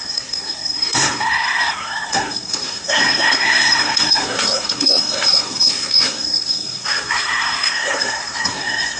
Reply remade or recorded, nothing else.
remade